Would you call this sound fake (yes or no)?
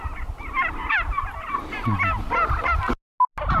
no